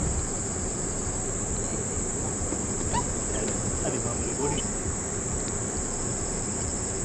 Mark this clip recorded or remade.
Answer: remade